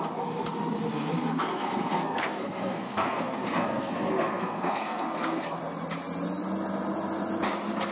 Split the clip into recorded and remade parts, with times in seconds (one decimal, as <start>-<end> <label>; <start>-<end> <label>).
0.0-0.9 recorded; 0.9-5.6 remade; 5.6-7.9 recorded